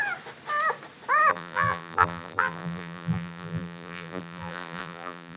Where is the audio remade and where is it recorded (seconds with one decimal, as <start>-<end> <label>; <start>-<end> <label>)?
0.0-1.3 recorded; 1.3-5.4 remade